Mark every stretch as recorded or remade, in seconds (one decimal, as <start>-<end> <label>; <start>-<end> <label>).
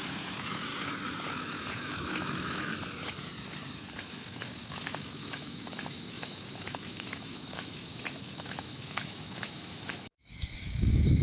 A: 0.0-0.7 remade; 0.7-1.3 recorded; 1.3-2.7 remade; 2.7-4.1 recorded; 4.1-11.2 remade